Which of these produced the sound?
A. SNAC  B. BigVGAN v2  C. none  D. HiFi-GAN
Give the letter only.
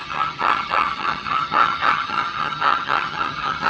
D